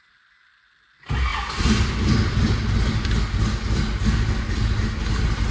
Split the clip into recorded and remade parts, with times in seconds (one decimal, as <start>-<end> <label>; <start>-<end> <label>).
0.0-5.5 recorded